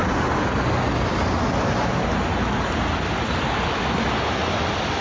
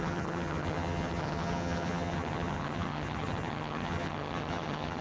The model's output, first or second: second